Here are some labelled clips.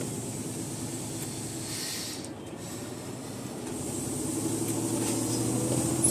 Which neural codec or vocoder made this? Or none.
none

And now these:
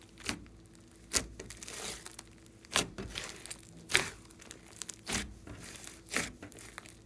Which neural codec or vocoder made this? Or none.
none